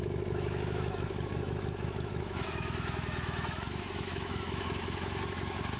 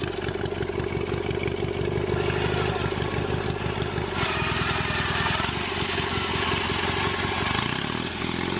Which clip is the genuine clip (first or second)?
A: second